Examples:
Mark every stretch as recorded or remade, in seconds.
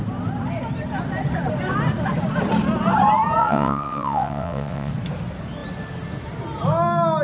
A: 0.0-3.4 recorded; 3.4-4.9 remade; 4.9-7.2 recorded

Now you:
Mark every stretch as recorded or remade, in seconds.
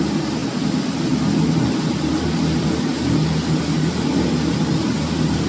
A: 0.0-5.5 recorded